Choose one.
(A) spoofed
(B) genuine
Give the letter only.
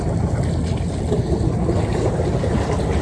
B